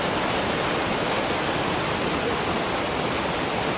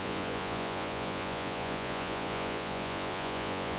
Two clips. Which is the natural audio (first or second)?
first